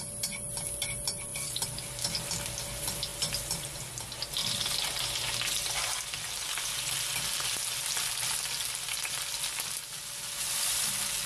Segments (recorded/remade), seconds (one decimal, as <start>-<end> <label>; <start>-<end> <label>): 0.0-11.3 recorded